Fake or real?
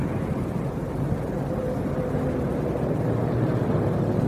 real